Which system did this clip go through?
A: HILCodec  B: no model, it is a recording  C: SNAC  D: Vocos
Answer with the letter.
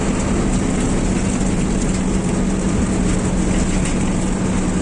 B